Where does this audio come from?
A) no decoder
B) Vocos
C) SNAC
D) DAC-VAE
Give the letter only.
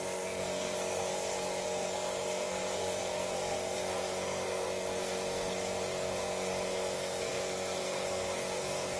C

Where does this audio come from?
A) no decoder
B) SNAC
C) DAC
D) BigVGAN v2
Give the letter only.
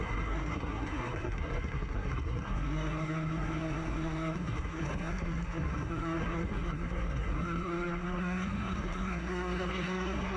B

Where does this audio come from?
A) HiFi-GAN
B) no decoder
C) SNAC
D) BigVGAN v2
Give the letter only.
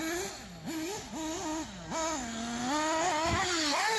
B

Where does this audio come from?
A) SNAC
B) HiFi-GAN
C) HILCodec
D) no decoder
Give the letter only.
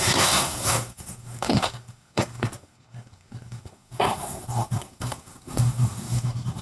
A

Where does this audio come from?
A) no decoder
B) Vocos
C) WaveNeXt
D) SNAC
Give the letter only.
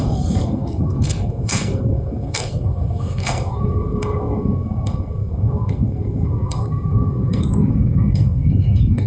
D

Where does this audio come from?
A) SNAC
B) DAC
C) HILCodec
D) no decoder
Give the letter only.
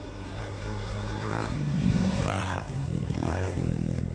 A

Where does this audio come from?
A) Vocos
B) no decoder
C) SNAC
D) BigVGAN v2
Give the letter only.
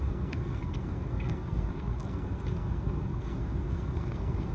C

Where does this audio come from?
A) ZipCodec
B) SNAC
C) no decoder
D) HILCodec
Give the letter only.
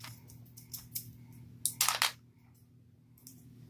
C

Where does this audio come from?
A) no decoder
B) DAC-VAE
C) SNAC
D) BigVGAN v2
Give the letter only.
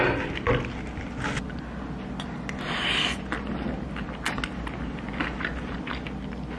A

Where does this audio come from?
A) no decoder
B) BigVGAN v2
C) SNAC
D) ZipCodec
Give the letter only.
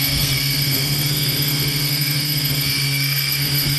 C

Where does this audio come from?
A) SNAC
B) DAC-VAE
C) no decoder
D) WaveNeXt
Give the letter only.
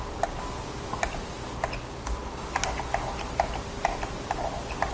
C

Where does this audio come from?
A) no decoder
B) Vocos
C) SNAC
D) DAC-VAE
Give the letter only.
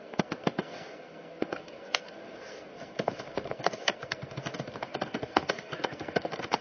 C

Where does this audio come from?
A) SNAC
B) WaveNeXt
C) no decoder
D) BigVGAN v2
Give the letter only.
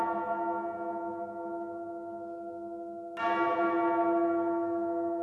C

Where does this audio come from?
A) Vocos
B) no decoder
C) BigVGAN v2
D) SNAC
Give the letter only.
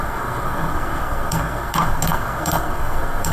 D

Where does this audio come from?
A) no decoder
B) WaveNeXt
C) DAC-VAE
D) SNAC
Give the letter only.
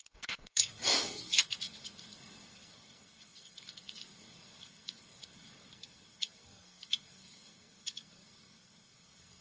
D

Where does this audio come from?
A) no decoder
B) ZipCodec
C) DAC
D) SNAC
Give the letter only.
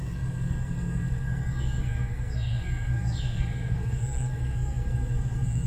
D